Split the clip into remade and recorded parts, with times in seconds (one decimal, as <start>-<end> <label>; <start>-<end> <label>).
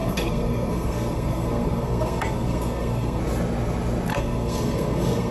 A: 0.0-3.2 remade; 3.2-4.1 recorded; 4.1-5.3 remade